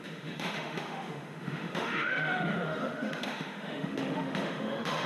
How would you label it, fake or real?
fake